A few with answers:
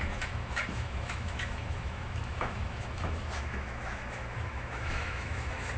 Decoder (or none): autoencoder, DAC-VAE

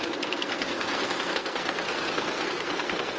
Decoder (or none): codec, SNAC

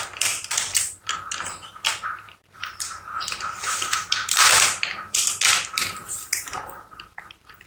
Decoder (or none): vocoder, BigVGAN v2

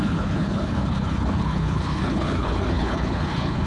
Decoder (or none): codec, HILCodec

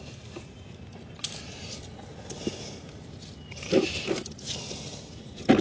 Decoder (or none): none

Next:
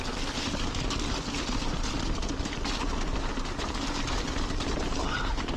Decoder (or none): none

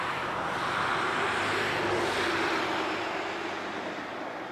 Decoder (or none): none